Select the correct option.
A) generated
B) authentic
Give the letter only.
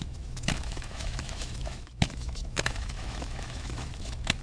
A